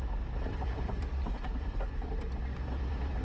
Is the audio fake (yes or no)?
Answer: yes